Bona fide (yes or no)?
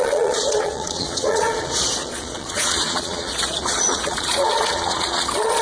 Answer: no